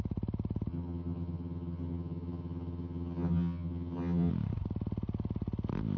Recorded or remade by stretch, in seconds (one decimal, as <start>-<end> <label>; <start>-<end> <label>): 0.0-0.7 recorded; 0.7-4.3 remade; 4.3-6.0 recorded